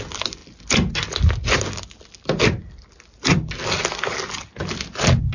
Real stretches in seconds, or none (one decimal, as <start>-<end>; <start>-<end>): 0.0-5.3